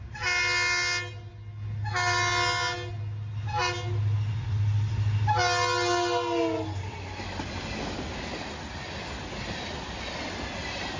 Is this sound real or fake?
real